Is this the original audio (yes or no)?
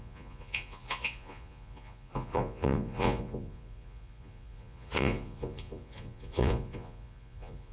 no